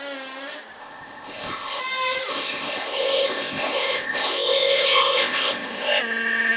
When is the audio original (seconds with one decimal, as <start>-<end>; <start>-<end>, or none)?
0.0-0.8; 1.8-2.3; 6.0-6.6